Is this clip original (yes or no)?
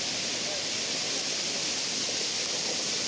yes